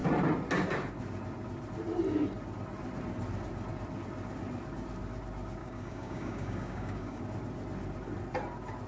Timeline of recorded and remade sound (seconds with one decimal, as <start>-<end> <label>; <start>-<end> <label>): 0.0-5.6 recorded; 5.6-7.2 remade; 7.2-8.9 recorded